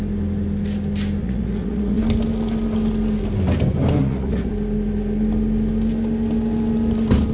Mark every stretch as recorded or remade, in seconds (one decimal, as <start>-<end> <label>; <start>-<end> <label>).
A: 0.0-1.2 recorded; 1.2-2.0 remade; 2.0-4.0 recorded; 4.0-4.5 remade; 4.5-7.3 recorded